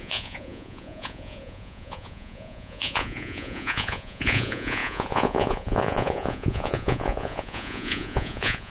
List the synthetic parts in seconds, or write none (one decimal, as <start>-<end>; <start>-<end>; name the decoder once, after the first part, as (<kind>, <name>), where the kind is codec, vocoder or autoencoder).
0.0-8.7 (vocoder, Vocos)